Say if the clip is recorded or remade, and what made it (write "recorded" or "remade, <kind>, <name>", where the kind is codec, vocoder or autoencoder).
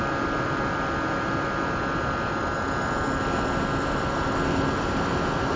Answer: recorded